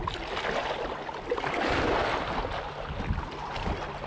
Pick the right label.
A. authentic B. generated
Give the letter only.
A